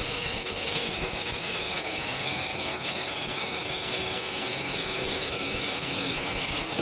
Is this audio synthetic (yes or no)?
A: yes